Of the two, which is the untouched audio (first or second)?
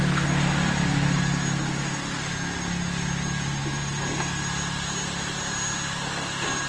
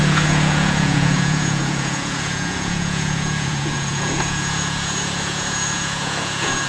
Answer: first